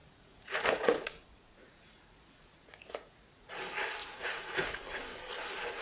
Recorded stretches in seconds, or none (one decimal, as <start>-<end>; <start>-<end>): 3.5-4.0; 5.0-5.8